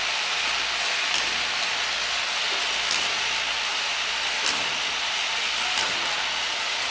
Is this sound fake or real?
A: real